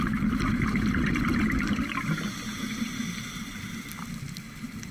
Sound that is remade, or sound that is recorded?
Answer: recorded